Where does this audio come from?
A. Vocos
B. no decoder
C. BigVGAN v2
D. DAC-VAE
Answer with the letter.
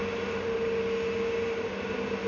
B